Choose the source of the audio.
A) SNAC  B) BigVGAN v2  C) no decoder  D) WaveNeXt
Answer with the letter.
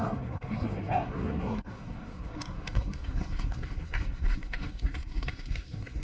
A